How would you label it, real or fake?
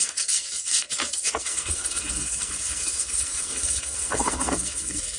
fake